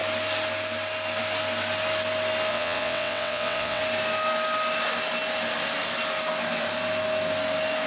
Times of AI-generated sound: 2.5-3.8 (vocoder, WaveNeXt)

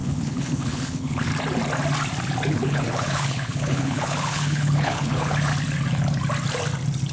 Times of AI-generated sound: 0.0-1.3 (codec, HILCodec); 2.5-5.5

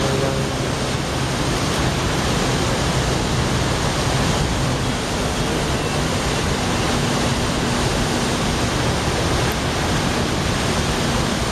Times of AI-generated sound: none

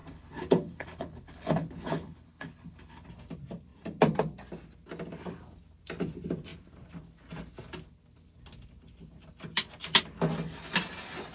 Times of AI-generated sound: 0.0-3.1 (codec, HILCodec)

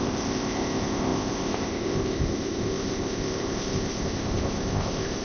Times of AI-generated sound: 0.0-5.2 (codec, ZipCodec)

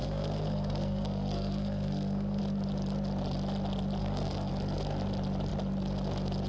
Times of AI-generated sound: 0.0-2.4 (codec, SNAC); 4.0-4.5

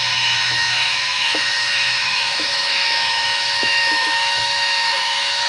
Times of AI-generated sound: 0.0-5.5 (autoencoder, DAC-VAE)

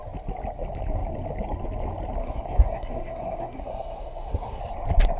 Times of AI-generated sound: 2.2-4.6 (codec, SNAC)